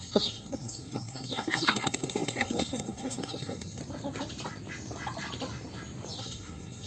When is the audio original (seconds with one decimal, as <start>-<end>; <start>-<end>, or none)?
3.8-6.2